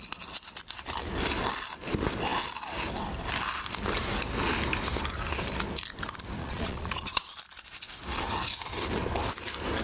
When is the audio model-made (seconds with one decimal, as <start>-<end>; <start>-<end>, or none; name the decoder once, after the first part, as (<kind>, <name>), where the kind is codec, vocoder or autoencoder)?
6.4-7.3 (vocoder, Vocos)